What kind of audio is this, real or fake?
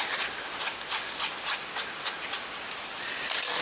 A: real